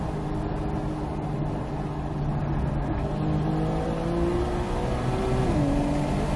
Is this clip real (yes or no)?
yes